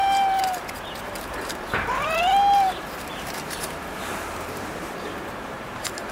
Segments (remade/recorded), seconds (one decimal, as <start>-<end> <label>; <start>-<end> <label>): 0.0-6.1 remade